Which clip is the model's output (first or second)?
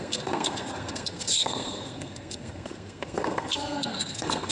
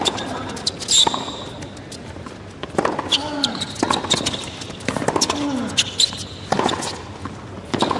first